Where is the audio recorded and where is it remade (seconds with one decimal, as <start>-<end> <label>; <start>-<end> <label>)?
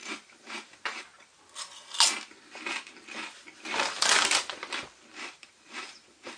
0.0-1.1 remade; 1.1-4.8 recorded; 4.8-6.4 remade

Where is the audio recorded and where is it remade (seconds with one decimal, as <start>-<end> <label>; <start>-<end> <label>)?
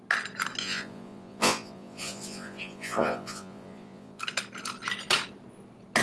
0.0-0.6 recorded; 0.6-4.2 remade; 4.2-6.0 recorded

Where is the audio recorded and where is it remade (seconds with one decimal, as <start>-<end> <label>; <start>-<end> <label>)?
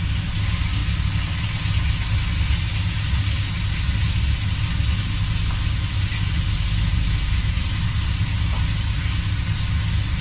0.0-10.2 recorded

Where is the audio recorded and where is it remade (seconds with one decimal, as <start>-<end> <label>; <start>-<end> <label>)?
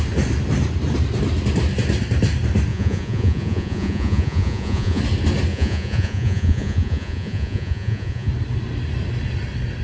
0.0-2.7 recorded; 2.7-5.0 remade; 5.0-5.5 recorded; 5.5-8.3 remade; 8.3-9.8 recorded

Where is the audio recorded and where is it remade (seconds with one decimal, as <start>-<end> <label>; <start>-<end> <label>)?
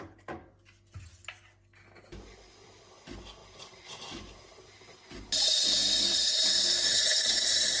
0.0-3.4 recorded; 3.4-7.8 remade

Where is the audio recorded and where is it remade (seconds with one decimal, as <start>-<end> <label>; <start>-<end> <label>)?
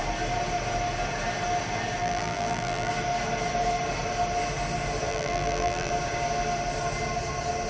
0.0-2.0 recorded; 2.0-2.9 remade; 2.9-5.1 recorded; 5.1-5.9 remade; 5.9-7.7 recorded